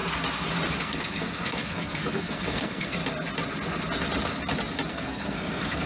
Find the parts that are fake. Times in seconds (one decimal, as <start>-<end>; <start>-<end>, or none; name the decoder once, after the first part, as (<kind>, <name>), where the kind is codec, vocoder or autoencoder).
0.8-3.0 (codec, SNAC); 4.9-5.9